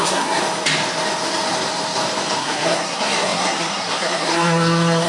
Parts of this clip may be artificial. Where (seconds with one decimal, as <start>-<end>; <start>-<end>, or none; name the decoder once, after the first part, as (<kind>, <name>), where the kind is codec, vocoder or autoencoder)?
0.0-0.4 (codec, SNAC); 2.4-5.1

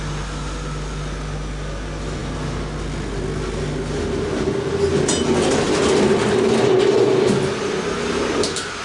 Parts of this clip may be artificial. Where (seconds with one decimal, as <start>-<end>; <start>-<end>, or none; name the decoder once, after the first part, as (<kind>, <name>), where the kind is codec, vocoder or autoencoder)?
none

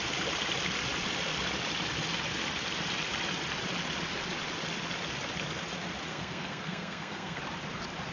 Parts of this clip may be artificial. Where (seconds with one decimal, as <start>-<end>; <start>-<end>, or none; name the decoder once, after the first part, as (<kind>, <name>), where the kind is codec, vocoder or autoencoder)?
6.1-7.4 (codec, SNAC)